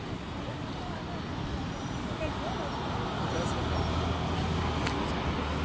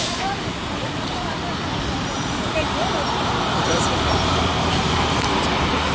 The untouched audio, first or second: first